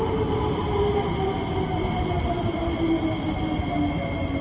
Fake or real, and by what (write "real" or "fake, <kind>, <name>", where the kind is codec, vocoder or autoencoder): real